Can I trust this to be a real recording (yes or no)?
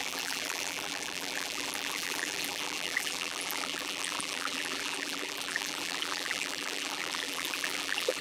no